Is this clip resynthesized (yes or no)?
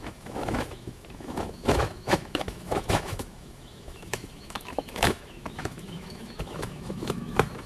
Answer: yes